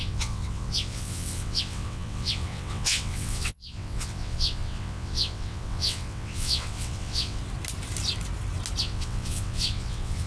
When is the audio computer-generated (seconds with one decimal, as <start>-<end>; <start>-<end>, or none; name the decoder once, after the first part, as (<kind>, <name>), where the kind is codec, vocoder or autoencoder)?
0.0-7.4 (vocoder, WaveNeXt); 8.8-10.3